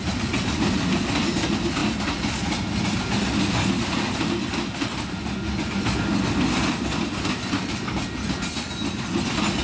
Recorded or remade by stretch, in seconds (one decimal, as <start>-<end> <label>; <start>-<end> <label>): 0.0-9.6 recorded